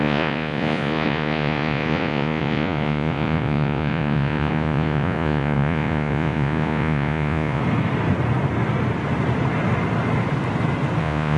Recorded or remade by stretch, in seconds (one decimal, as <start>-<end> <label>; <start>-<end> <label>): 0.0-7.6 remade; 7.6-11.0 recorded; 11.0-11.4 remade